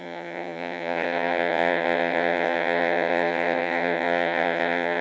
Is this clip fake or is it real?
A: fake